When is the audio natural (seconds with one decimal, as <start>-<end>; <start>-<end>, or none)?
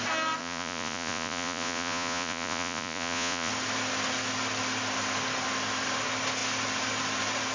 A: 0.0-0.4; 3.5-7.5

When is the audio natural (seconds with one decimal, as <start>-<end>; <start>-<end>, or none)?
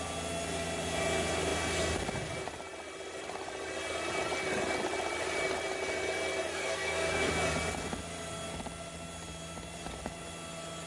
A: 0.0-6.5; 7.3-10.9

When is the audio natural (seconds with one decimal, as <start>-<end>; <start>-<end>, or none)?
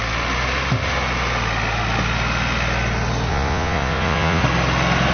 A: 0.0-3.3; 4.4-5.1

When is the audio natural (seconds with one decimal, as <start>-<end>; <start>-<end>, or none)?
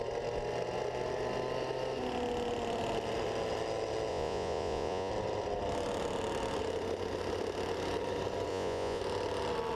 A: 0.0-4.1; 5.1-8.5; 9.0-9.8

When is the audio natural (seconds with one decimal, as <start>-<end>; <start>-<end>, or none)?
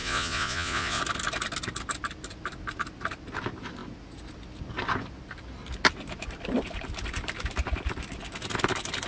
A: 1.0-9.1